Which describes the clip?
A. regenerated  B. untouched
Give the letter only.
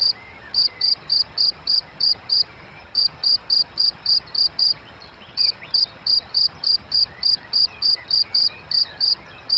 A